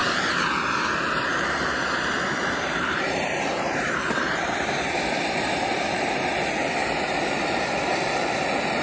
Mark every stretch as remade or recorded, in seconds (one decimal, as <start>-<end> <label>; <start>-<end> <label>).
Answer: 0.0-0.5 remade; 0.5-1.3 recorded; 1.3-6.3 remade; 6.3-8.8 recorded